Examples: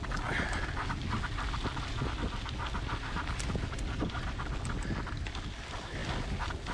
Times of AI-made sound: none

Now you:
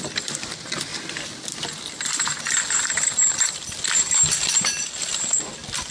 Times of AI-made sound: none

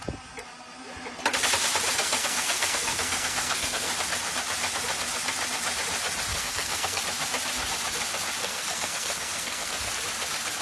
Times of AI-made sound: 2.0-3.9 (codec, SNAC); 6.3-7.0; 8.4-9.9

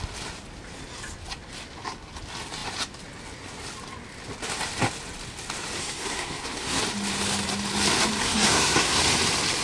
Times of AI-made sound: 5.8-6.8 (codec, SNAC); 8.2-9.0

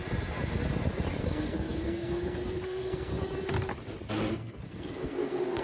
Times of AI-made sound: 1.2-3.1 (codec, SNAC); 4.3-5.6

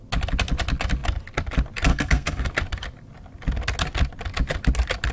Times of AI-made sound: 1.9-2.5 (codec, SNAC)